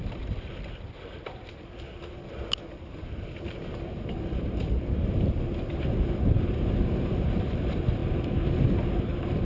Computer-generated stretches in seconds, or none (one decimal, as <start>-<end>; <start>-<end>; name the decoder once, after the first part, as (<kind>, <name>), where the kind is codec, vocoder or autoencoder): none